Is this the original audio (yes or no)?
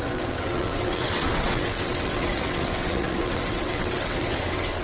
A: no